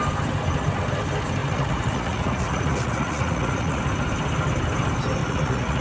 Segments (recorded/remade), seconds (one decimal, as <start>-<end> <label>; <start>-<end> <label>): 0.0-1.4 recorded; 1.4-3.8 remade; 3.8-5.2 recorded; 5.2-5.8 remade